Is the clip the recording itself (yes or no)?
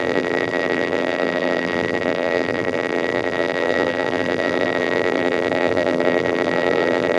no